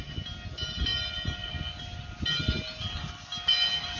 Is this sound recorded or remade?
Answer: recorded